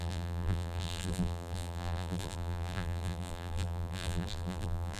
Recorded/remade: remade